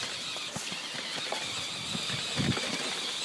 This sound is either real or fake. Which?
real